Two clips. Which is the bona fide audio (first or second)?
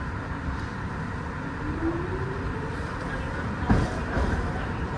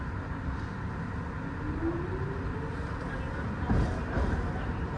second